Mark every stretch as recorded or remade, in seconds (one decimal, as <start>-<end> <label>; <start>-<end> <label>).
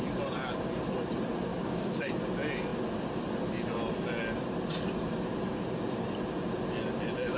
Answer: 0.0-1.5 recorded; 1.5-2.1 remade; 2.1-7.4 recorded